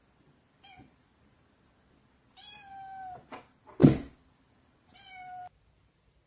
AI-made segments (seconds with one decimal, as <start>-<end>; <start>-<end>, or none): none